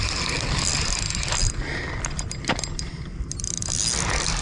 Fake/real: real